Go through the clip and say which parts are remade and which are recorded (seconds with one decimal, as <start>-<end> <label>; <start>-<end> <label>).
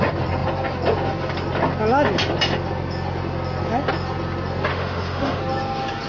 0.0-4.7 recorded; 4.7-5.4 remade; 5.4-6.1 recorded